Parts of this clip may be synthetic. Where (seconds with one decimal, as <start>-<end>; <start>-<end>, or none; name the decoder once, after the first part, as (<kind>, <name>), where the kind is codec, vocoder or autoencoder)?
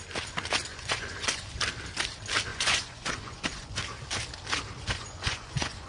0.7-1.6 (vocoder, Vocos); 2.5-3.8; 4.8-5.9